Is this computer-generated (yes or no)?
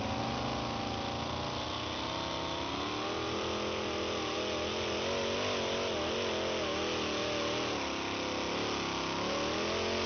no